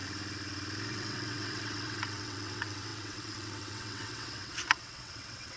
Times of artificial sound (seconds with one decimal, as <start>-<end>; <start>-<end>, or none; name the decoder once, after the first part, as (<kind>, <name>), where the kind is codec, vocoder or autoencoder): 0.9-5.6 (vocoder, WaveNeXt)